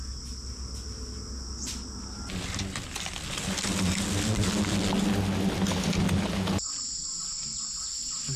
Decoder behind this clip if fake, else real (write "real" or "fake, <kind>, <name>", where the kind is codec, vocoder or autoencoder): real